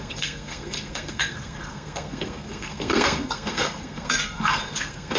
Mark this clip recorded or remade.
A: remade